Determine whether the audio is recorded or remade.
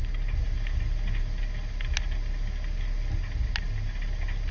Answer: recorded